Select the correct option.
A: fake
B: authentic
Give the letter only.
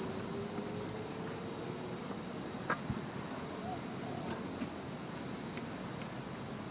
B